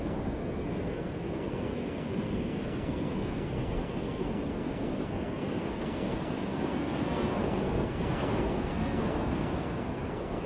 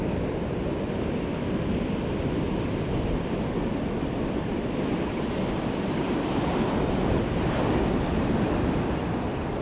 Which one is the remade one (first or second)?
first